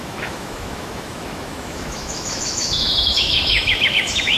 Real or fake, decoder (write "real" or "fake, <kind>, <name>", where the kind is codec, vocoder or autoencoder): fake, autoencoder, DAC-VAE